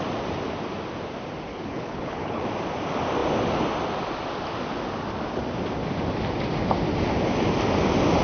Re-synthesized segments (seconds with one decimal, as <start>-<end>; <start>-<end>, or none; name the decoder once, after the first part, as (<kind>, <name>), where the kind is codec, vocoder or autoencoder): 1.5-2.4 (codec, HILCodec)